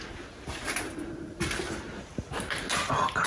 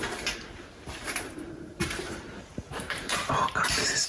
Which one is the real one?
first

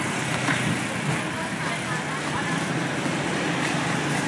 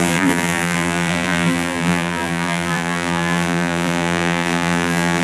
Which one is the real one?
first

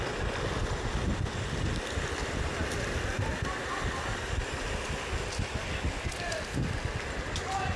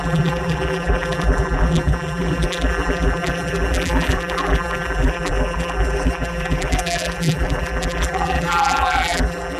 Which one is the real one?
first